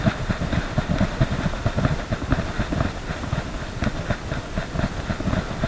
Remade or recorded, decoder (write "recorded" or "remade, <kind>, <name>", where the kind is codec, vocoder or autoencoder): recorded